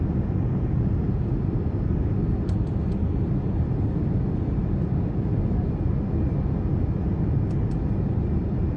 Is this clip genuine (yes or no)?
yes